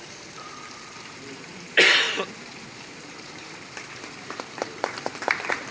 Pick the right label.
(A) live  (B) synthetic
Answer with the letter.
B